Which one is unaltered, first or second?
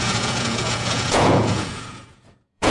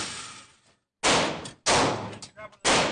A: second